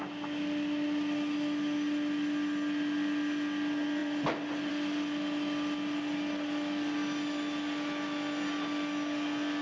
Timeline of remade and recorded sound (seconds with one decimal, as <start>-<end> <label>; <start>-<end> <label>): 0.0-4.0 recorded; 4.0-4.7 remade; 4.7-9.6 recorded